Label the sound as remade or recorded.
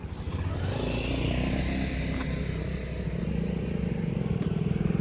recorded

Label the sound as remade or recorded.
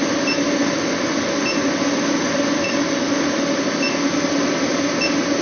recorded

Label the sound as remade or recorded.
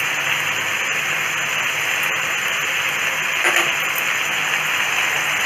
recorded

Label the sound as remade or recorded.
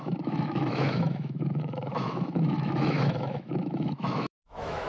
remade